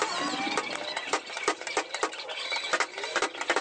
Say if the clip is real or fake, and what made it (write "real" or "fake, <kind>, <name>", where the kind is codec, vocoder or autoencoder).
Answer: real